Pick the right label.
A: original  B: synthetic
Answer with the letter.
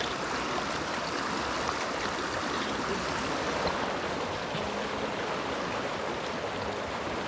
A